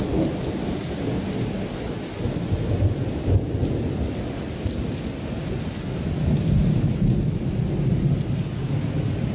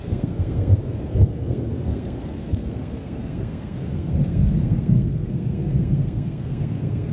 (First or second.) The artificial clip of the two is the second